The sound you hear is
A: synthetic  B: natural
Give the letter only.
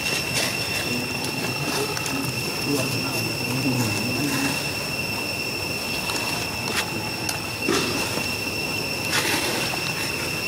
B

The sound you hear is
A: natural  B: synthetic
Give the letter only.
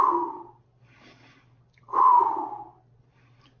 A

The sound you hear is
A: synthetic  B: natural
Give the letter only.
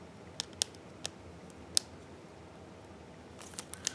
B